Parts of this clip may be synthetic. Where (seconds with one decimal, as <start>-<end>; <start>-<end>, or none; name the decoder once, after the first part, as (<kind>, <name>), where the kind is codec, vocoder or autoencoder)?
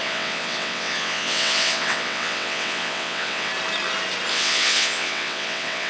0.0-3.5 (vocoder, WaveNeXt); 4.3-5.9